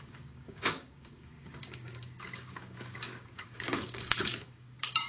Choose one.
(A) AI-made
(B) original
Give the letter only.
A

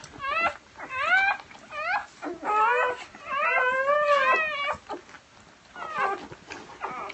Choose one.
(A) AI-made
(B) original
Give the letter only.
B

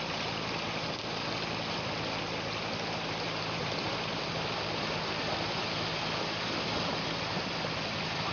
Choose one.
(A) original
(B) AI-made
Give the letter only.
A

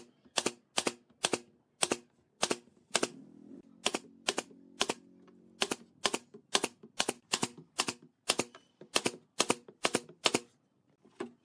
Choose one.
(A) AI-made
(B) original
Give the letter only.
B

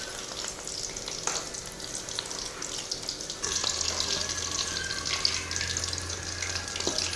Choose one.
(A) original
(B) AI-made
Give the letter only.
A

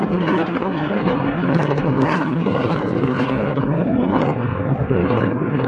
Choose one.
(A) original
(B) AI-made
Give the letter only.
B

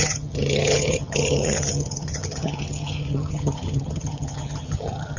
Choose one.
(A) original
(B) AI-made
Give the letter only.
B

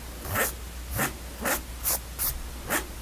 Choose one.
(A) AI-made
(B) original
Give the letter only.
B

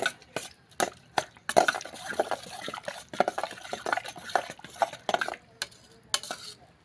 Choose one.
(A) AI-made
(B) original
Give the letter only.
B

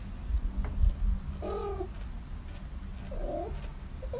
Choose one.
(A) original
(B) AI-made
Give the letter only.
A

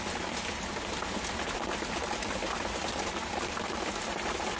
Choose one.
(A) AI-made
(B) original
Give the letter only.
B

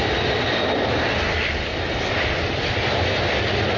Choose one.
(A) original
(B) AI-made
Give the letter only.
A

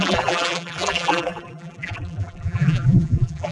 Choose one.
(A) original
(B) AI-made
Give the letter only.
B